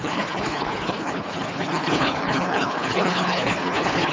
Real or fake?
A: fake